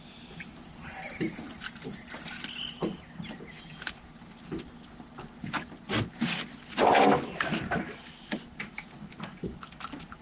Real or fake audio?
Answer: real